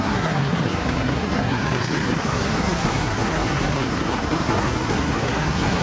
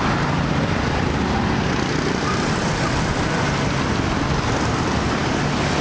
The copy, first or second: first